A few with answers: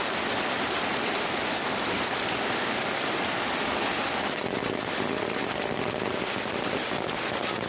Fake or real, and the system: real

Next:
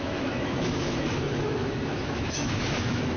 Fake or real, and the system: fake, autoencoder, DAC-VAE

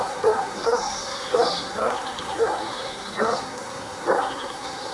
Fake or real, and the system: fake, codec, SNAC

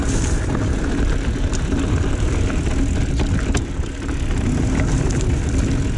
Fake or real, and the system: real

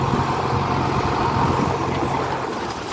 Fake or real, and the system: real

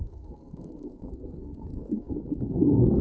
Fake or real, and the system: fake, codec, SNAC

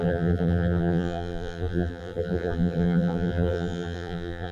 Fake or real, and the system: fake, vocoder, BigVGAN v2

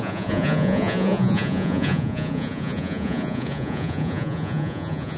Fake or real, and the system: fake, vocoder, Vocos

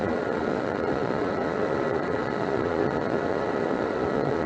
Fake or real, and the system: fake, vocoder, Vocos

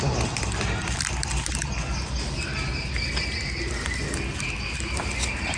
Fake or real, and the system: real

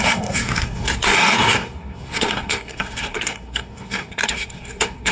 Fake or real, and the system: fake, codec, SNAC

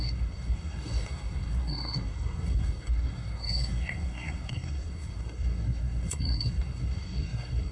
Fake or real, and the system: fake, codec, SNAC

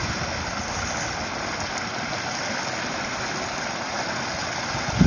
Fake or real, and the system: real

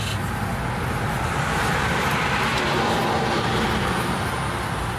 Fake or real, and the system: real